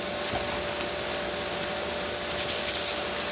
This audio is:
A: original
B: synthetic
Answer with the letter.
A